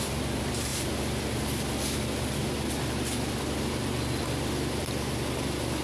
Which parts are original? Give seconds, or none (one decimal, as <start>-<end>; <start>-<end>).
0.0-5.8